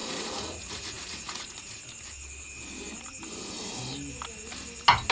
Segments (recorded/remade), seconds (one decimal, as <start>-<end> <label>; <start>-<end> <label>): 0.0-1.9 remade; 1.9-5.1 recorded